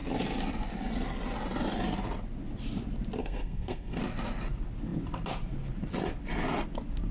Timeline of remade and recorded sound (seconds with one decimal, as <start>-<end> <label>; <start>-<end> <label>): 0.0-3.2 recorded; 3.2-4.0 remade; 4.0-7.1 recorded